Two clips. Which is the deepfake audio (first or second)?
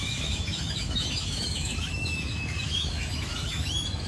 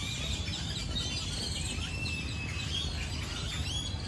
first